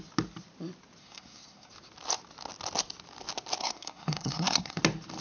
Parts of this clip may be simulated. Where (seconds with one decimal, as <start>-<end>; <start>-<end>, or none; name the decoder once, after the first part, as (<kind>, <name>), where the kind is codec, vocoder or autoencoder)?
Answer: 1.0-1.7 (codec, SNAC); 3.6-4.8